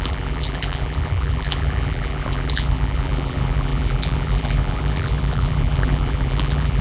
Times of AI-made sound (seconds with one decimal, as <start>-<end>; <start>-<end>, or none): 0.0-6.8